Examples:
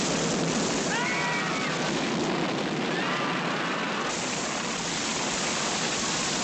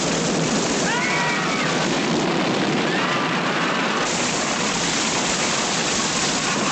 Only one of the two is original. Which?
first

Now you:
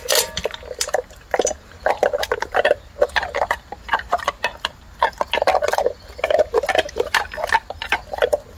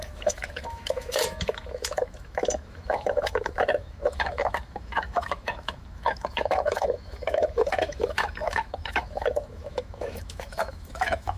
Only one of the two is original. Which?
first